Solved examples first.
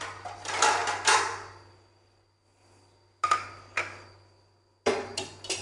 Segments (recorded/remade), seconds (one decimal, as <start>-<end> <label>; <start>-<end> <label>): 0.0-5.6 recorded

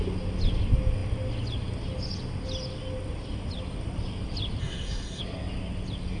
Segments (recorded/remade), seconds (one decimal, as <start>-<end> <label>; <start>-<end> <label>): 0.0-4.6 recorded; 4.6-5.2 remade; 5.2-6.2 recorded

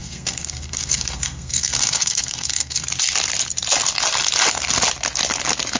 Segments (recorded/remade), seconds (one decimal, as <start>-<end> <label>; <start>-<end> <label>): 0.0-2.9 remade; 2.9-5.8 recorded

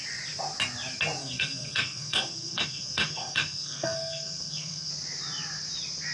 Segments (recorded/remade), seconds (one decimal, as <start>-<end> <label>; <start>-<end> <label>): 0.0-1.2 recorded; 1.2-4.9 remade; 4.9-6.1 recorded